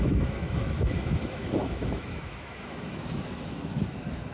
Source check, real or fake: fake